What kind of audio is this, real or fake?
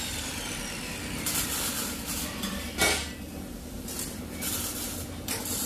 fake